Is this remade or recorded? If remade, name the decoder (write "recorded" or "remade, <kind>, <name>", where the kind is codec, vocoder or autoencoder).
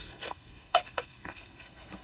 remade, codec, SNAC